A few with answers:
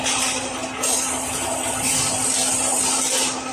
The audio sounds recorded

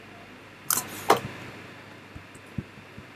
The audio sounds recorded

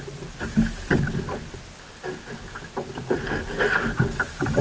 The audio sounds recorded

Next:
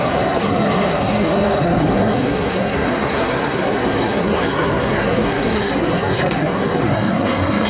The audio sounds remade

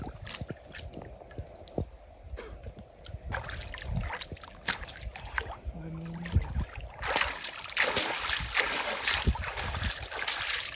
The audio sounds recorded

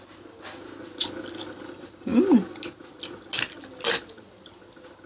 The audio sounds recorded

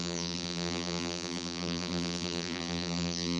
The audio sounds remade